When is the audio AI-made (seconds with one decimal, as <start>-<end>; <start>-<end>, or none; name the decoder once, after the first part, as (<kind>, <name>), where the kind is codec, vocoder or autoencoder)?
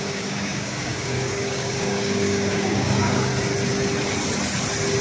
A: 0.0-3.3 (codec, DAC)